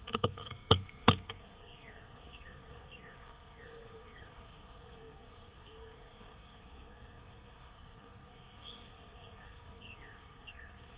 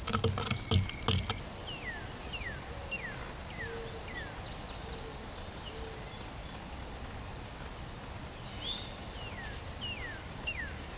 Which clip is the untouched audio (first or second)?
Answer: second